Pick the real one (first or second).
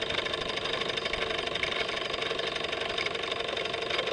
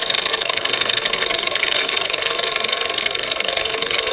first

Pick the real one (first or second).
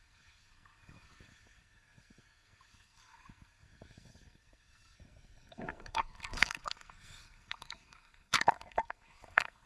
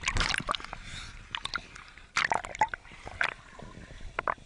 second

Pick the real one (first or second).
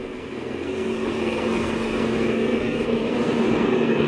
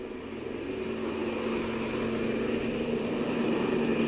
second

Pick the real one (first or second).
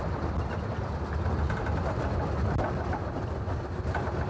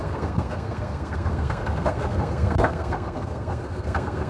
first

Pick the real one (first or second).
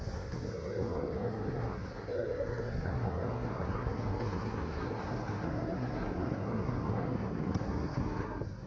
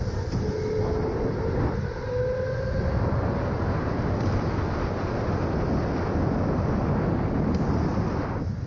second